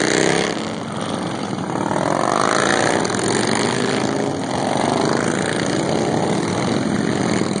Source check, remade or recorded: recorded